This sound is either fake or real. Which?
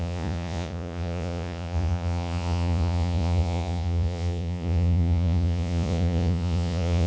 fake